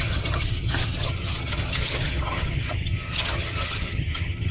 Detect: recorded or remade remade